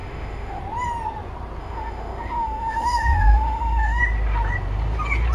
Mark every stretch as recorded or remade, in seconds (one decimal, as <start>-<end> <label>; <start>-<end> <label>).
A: 0.0-0.6 remade; 0.6-1.6 recorded; 1.6-4.0 remade; 4.0-5.3 recorded